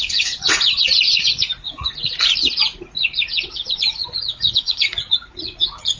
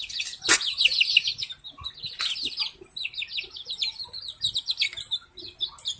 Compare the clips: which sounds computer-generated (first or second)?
first